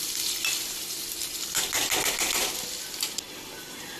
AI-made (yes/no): no